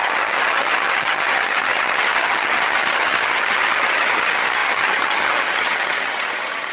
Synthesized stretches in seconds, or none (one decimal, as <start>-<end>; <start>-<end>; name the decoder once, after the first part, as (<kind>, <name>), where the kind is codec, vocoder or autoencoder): 0.0-6.7 (vocoder, HiFi-GAN)